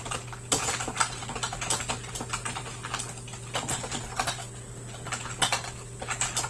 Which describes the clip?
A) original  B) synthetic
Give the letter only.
A